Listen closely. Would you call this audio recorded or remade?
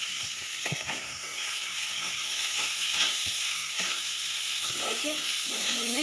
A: remade